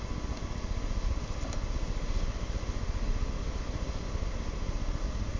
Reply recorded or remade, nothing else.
recorded